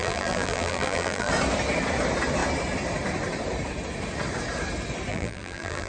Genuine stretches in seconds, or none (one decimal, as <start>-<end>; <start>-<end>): 1.3-5.1